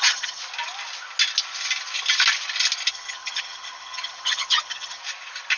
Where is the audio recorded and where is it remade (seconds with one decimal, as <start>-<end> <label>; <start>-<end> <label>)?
0.0-0.4 remade; 0.4-2.9 recorded; 2.9-5.0 remade; 5.0-5.6 recorded